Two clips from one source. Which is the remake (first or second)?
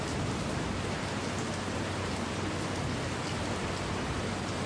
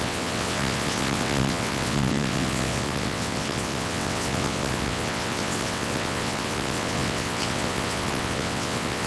second